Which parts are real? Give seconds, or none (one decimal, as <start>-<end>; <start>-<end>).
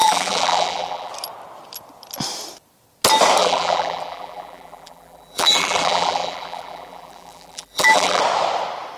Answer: 1.1-3.4; 8.2-9.0